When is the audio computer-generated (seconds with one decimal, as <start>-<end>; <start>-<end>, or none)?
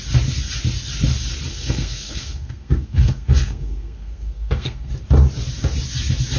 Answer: 1.5-4.9